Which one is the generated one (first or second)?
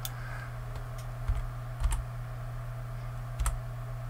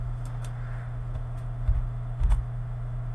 second